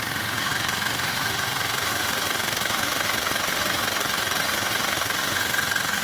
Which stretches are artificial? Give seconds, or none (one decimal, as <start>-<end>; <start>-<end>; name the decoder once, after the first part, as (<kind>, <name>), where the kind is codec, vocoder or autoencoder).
0.0-6.0 (autoencoder, DAC-VAE)